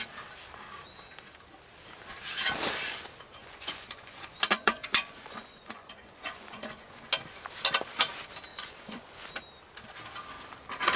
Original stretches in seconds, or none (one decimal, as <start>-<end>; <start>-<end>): 0.0-3.4; 7.1-8.5; 9.3-11.0